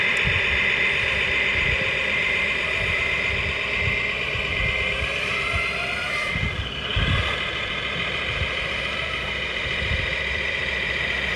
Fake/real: fake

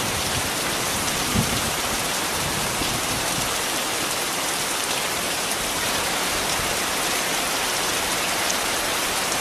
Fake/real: fake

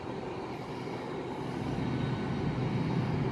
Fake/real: real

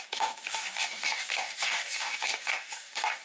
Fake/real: fake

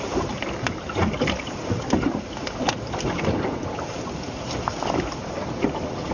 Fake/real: real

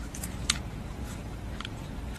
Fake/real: fake